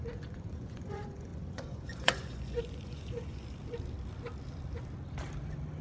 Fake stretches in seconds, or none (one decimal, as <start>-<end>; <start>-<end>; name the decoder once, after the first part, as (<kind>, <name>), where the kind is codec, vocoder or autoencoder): 0.0-3.4 (vocoder, Vocos)